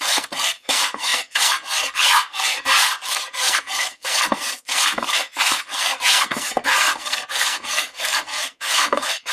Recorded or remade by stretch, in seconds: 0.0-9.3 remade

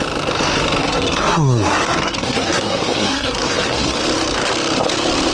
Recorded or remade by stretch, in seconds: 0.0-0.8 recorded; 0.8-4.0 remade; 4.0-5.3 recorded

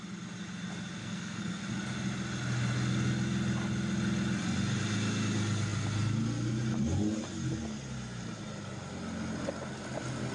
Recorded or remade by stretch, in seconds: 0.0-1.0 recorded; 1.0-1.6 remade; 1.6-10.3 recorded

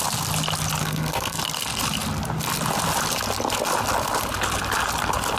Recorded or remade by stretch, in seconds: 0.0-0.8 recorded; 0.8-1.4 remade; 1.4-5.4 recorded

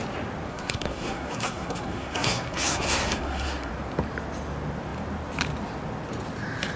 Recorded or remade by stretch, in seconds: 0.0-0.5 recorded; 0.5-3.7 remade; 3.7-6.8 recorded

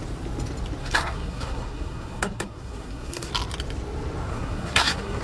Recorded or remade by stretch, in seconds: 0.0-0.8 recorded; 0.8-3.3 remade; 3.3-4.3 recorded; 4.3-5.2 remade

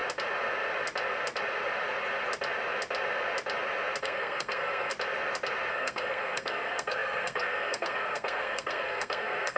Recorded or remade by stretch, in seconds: 0.0-4.0 recorded; 4.0-4.9 remade; 4.9-5.7 recorded; 5.7-9.6 remade

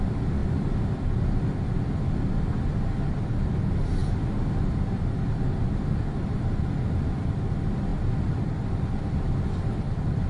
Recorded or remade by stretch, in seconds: 0.0-10.3 recorded